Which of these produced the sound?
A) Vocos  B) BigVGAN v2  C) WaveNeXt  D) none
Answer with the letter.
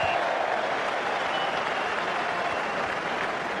D